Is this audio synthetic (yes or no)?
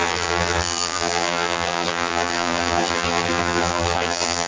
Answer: yes